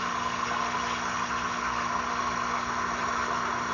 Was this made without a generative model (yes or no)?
yes